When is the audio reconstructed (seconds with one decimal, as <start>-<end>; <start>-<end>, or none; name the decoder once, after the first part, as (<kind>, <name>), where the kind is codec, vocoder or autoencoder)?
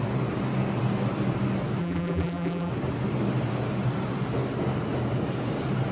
1.8-2.7 (vocoder, BigVGAN v2)